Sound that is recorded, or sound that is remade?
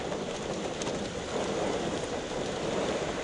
recorded